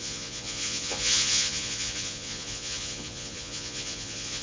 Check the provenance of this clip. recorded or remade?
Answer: remade